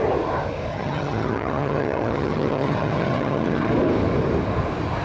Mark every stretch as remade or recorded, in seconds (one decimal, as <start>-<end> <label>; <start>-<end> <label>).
0.0-0.7 recorded; 0.7-3.7 remade; 3.7-5.0 recorded